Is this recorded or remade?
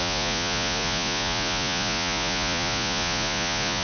remade